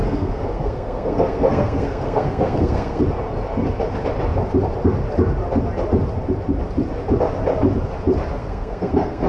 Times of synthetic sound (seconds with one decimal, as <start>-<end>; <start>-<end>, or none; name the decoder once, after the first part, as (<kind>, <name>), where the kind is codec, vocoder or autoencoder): 0.0-3.0 (codec, SNAC); 8.4-9.3